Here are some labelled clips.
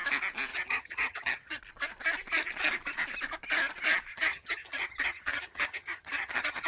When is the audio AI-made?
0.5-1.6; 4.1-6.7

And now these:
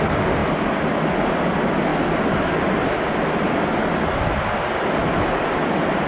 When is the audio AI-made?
none

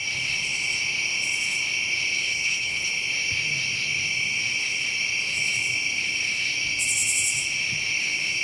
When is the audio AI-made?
2.3-2.9

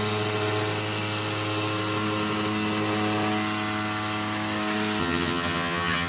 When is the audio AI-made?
5.0-6.1

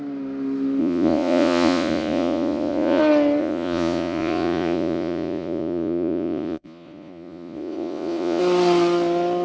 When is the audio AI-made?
0.8-3.0; 3.4-8.4

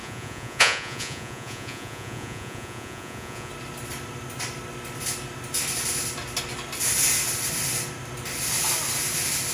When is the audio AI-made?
0.0-3.5

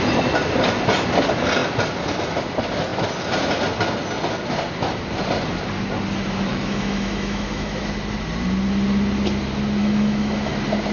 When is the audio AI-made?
6.5-7.8; 9.8-10.5

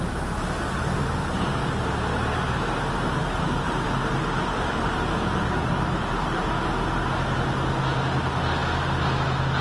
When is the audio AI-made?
1.6-6.5